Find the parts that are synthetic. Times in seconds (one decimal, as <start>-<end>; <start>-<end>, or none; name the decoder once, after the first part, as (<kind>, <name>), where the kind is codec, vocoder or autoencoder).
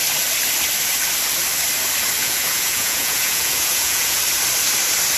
2.2-4.2 (vocoder, Vocos)